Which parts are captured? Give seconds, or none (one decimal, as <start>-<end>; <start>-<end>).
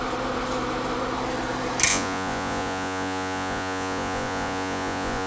0.0-1.9